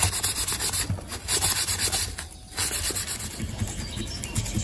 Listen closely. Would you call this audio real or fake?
real